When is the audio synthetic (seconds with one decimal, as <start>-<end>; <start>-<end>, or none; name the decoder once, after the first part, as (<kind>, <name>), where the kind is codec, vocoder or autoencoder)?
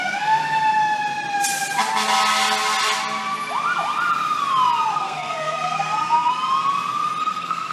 0.0-0.4 (codec, SNAC); 4.9-6.3; 7.2-7.7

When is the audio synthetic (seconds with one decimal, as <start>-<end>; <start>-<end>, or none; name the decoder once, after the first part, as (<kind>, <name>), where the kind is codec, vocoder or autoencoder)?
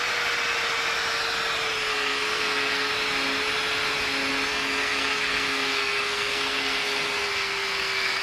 1.9-2.9 (codec, SNAC); 4.5-8.2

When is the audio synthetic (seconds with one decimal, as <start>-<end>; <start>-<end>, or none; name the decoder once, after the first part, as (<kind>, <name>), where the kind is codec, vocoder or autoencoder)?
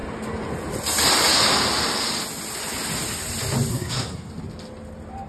3.7-4.3 (codec, SNAC)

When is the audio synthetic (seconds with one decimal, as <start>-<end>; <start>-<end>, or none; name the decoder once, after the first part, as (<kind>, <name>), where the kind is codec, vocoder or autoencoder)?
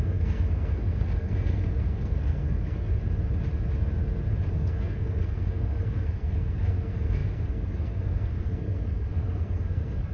0.0-3.0 (codec, SNAC); 4.5-10.1